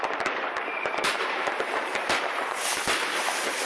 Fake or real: fake